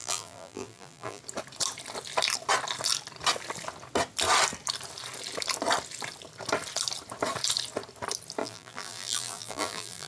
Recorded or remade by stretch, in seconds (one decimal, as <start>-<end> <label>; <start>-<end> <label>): 0.0-1.2 remade; 1.2-8.4 recorded; 8.4-10.1 remade